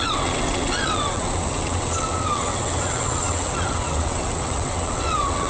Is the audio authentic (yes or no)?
no